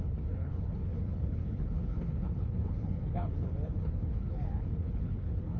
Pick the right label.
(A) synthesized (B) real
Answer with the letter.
A